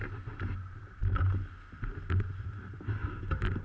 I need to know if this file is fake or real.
real